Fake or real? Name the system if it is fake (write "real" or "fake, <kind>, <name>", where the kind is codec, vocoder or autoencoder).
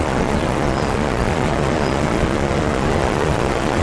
fake, vocoder, Vocos